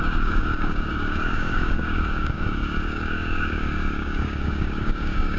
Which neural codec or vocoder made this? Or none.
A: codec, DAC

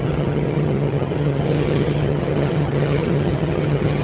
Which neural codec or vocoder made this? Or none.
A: vocoder, HiFi-GAN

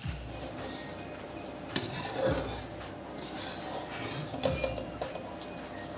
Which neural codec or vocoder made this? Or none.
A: none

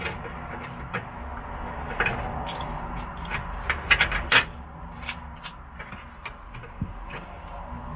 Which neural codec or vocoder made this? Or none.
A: none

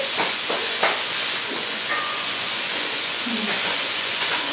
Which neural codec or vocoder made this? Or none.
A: vocoder, Vocos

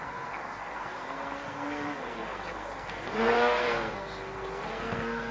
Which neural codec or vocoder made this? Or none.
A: codec, SNAC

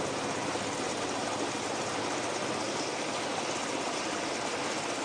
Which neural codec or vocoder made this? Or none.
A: none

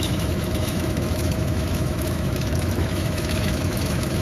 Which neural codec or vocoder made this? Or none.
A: autoencoder, DAC-VAE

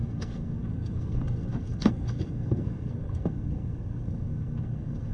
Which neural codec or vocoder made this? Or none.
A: codec, SNAC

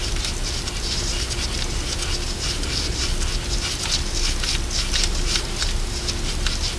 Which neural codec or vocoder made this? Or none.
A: none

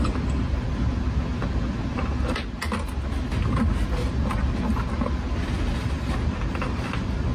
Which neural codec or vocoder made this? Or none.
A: none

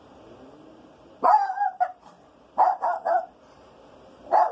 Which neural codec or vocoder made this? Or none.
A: vocoder, BigVGAN v2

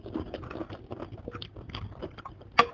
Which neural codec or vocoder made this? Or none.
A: none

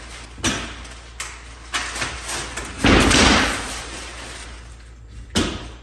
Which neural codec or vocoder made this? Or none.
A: none